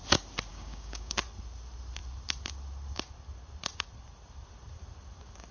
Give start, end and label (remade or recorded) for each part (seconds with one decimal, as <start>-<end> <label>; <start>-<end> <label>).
0.0-0.5 recorded; 0.5-1.1 remade; 1.1-5.5 recorded